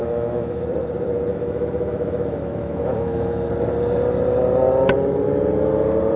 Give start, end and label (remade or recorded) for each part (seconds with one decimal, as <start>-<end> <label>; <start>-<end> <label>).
0.0-0.6 remade; 0.6-1.3 recorded; 1.3-3.5 remade; 3.5-6.2 recorded